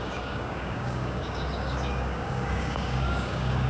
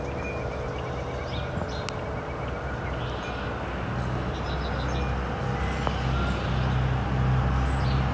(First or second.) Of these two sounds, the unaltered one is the second